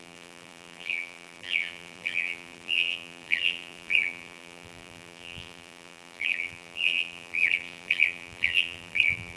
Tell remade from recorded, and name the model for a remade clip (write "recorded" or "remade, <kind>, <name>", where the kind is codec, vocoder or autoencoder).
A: remade, vocoder, BigVGAN v2